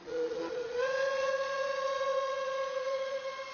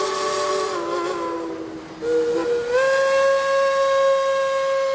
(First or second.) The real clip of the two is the second